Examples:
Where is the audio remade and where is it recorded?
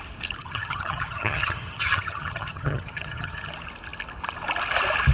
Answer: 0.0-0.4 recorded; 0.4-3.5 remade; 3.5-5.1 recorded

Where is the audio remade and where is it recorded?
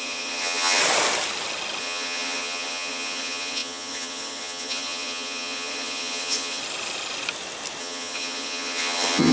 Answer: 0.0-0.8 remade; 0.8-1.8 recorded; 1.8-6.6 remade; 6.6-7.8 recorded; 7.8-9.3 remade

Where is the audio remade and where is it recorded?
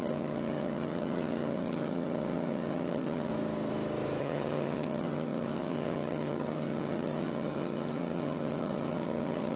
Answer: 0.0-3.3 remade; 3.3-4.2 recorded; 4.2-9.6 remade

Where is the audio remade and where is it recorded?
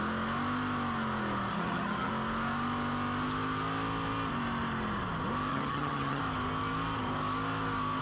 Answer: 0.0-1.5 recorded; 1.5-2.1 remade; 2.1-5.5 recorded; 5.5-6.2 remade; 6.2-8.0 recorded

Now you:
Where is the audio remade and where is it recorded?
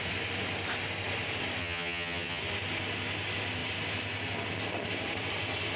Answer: 0.0-1.6 recorded; 1.6-2.4 remade; 2.4-5.8 recorded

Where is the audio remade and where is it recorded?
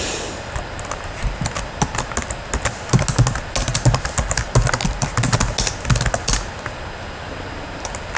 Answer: 0.0-8.2 recorded